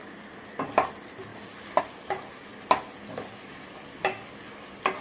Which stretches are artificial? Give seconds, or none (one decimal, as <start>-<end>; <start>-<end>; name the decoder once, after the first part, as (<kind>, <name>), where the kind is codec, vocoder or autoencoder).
none